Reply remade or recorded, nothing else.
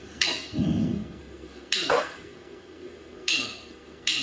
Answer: remade